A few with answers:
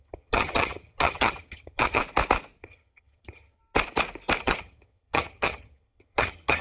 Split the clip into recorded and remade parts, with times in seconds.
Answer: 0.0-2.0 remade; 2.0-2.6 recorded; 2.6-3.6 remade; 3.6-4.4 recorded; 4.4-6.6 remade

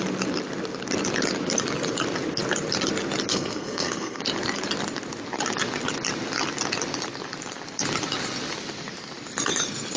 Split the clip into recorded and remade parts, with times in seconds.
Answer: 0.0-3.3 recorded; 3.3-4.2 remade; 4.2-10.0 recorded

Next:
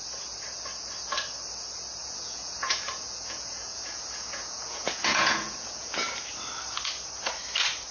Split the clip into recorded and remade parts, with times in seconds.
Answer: 0.0-2.0 recorded; 2.0-6.1 remade; 6.1-7.9 recorded